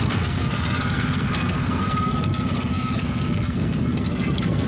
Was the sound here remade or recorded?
remade